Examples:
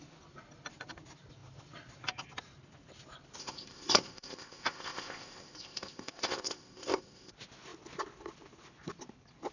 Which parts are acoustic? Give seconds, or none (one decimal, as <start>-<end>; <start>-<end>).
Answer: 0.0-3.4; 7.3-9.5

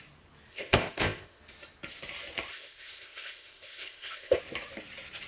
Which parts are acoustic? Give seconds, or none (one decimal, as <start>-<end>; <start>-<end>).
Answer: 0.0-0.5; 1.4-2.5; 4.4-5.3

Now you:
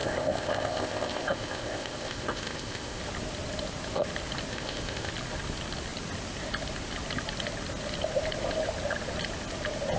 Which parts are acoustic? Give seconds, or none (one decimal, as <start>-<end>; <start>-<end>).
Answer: 3.0-4.5; 5.1-10.0

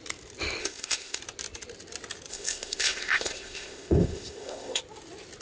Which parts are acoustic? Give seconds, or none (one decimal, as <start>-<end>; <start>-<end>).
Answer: 0.0-0.6; 1.2-2.3; 4.8-5.4

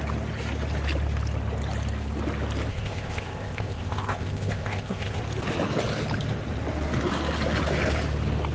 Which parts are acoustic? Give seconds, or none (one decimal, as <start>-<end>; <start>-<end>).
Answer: 0.0-2.7; 5.2-8.5

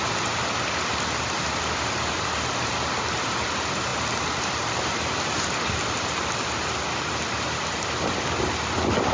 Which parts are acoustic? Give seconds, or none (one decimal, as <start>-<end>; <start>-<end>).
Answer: 0.0-9.1

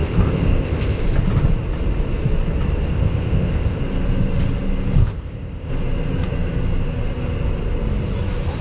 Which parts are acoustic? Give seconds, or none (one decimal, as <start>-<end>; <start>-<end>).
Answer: 1.0-2.9; 3.8-5.0; 5.7-8.6

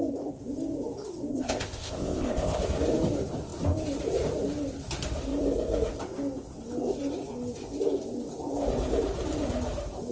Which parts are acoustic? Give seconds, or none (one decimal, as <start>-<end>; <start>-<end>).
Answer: 0.0-1.3; 2.6-10.1